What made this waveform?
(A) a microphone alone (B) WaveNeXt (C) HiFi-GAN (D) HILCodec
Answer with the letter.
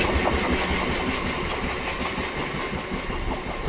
A